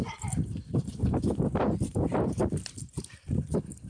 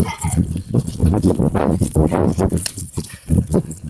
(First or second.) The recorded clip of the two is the first